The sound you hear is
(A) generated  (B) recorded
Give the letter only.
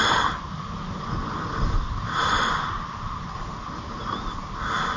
B